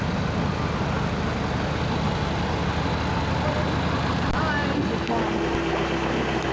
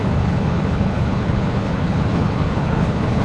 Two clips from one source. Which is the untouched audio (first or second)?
first